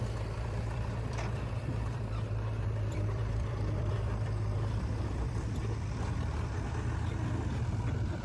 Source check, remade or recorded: remade